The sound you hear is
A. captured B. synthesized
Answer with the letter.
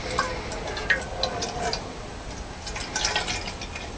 A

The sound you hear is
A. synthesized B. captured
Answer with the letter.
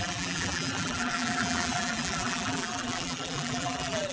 A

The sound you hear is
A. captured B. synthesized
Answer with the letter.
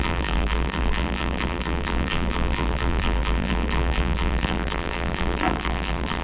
B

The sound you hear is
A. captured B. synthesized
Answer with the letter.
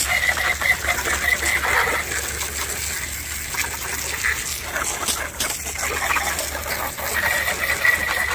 A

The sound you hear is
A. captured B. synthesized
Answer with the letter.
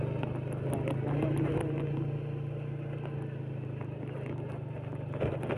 A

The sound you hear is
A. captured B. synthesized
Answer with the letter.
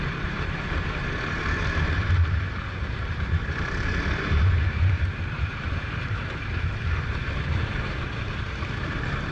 B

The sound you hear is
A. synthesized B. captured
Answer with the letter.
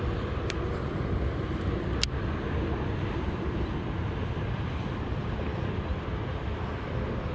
B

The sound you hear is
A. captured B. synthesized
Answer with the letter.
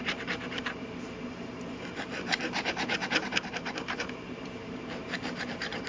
B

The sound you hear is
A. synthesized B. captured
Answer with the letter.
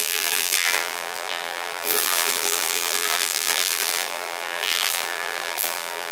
A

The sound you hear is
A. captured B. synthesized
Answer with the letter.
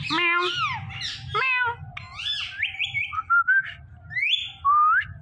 A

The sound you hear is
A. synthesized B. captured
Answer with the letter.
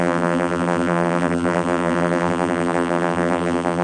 A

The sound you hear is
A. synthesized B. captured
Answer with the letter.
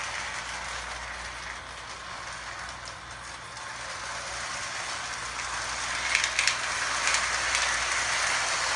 B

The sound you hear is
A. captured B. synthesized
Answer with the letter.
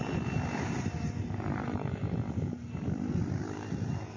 B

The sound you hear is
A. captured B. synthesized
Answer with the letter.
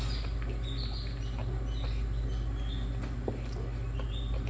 A